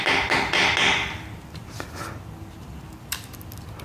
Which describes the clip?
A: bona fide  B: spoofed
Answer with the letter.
A